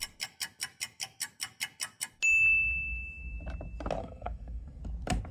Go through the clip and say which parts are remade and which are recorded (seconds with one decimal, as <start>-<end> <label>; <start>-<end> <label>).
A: 0.0-4.0 recorded; 4.0-4.8 remade; 4.8-5.3 recorded